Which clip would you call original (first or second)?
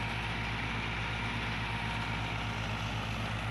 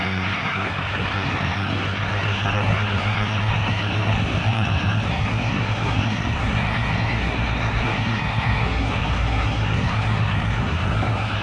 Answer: first